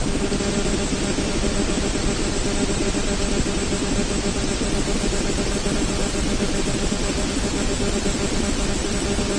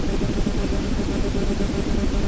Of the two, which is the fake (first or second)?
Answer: second